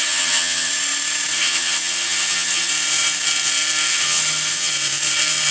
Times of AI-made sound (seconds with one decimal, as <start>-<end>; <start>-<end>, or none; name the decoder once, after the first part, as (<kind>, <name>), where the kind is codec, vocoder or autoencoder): 0.0-0.7 (vocoder, HiFi-GAN); 1.3-2.7; 3.9-4.7